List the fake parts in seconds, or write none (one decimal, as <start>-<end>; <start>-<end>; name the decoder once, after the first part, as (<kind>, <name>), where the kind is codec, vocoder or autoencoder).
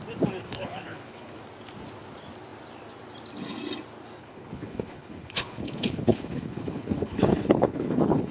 0.4-1.4 (codec, HILCodec); 4.2-8.3